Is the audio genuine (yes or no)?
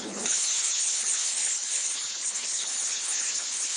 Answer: no